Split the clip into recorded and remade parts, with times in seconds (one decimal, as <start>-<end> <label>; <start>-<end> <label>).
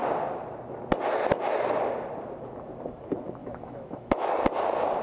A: 0.0-3.4 recorded; 3.4-4.4 remade; 4.4-5.0 recorded